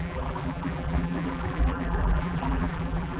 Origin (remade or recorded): remade